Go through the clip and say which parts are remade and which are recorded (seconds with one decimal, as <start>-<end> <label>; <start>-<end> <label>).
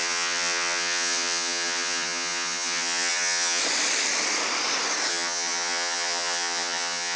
0.0-3.6 remade; 3.6-5.1 recorded; 5.1-7.2 remade